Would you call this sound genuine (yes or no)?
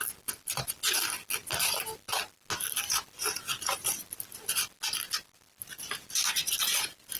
yes